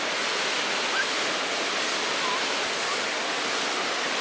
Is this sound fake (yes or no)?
no